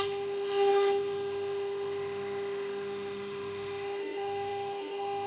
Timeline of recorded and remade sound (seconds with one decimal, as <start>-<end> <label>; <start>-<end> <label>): 0.0-5.3 remade